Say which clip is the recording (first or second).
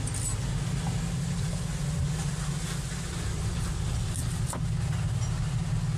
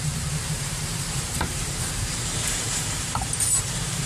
first